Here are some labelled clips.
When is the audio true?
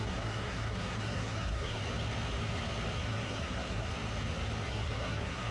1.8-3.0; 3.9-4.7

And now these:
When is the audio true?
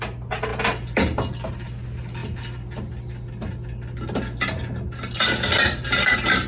0.0-6.5